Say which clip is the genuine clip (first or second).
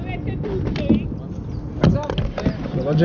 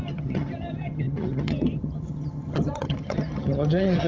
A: first